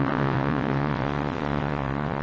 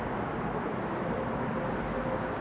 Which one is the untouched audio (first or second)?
second